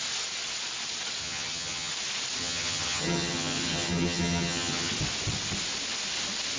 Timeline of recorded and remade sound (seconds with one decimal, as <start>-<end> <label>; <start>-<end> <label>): 0.0-1.2 recorded; 1.2-1.9 remade; 1.9-2.4 recorded; 2.4-4.9 remade; 4.9-6.6 recorded